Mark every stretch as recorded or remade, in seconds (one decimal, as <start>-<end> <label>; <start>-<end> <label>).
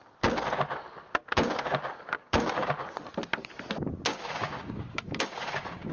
0.0-1.2 recorded; 1.2-2.7 remade; 2.7-4.1 recorded; 4.1-5.9 remade